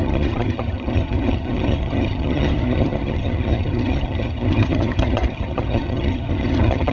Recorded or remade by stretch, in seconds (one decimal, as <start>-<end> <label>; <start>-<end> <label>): 0.0-6.9 remade